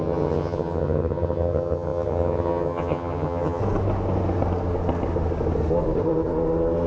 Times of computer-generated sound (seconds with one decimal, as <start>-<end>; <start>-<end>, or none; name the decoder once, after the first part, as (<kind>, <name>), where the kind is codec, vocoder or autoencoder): 0.0-3.6 (vocoder, HiFi-GAN)